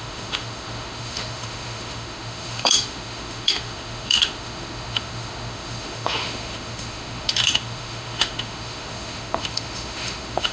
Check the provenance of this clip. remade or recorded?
remade